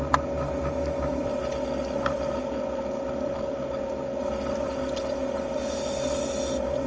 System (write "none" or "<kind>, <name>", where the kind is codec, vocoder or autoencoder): none